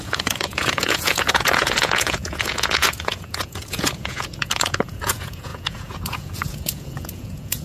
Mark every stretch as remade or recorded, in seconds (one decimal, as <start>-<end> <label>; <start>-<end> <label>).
0.0-7.6 remade